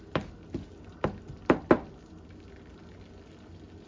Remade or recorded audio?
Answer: recorded